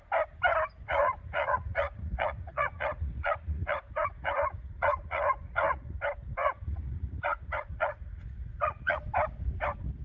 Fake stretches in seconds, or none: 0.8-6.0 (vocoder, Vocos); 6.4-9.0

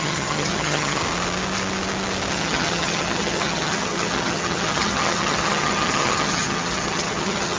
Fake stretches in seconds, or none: 0.0-1.0 (vocoder, HiFi-GAN); 2.3-7.6